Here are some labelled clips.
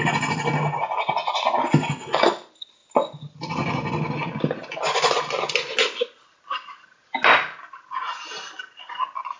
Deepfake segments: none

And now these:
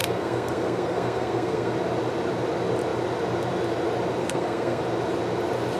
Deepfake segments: 0.0-1.7 (codec, SNAC); 4.2-4.8

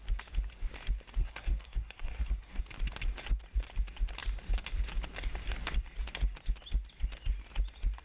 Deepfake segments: 1.2-2.6 (codec, SNAC)

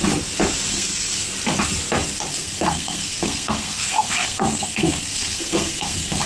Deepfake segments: 0.7-1.3 (codec, SNAC); 2.3-6.3

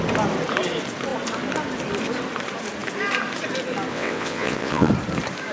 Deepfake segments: 3.9-4.9 (vocoder, WaveNeXt)

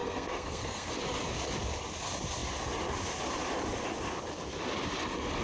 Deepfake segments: 0.0-0.9 (codec, SNAC)

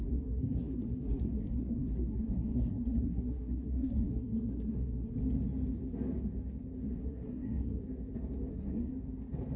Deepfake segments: 0.0-5.2 (codec, SNAC); 7.0-7.8; 8.5-8.9